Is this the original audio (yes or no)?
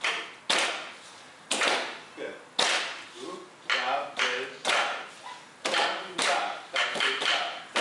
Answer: yes